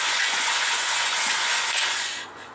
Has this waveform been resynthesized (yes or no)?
yes